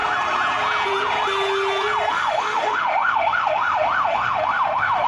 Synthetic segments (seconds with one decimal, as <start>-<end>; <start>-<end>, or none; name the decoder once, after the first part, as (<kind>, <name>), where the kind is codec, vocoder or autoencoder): 2.1-5.1 (autoencoder, DAC-VAE)